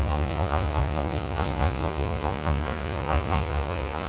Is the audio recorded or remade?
remade